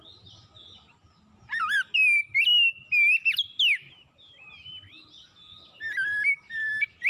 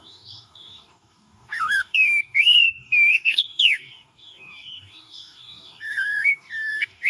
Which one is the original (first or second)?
first